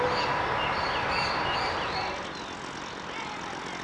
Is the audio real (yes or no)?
yes